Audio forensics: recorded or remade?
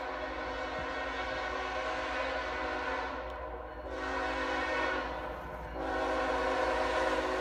recorded